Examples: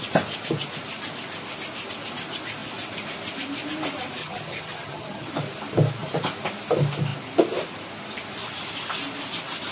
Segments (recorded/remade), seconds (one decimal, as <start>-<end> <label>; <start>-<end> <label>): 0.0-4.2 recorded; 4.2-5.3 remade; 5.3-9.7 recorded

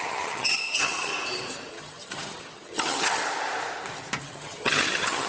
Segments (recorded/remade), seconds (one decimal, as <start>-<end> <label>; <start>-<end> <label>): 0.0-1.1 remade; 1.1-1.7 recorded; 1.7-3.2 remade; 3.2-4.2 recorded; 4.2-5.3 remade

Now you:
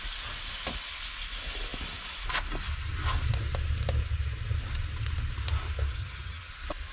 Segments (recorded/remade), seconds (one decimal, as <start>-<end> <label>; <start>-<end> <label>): 0.0-6.0 recorded; 6.0-6.5 remade; 6.5-6.9 recorded